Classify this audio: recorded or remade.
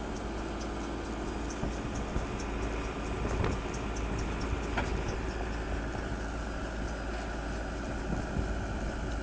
recorded